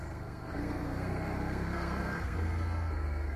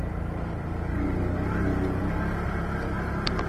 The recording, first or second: second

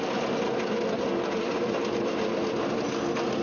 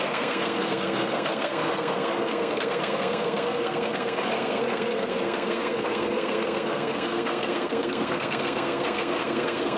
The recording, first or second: first